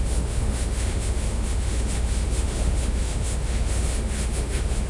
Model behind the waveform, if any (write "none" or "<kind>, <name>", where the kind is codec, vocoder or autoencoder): autoencoder, DAC-VAE